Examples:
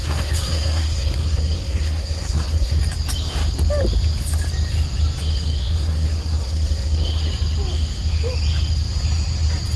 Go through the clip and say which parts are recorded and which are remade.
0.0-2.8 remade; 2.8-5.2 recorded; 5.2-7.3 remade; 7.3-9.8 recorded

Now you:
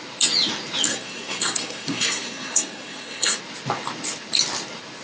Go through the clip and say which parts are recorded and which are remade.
0.0-0.9 recorded; 0.9-3.4 remade; 3.4-5.0 recorded